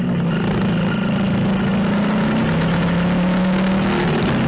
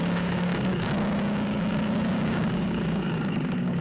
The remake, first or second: second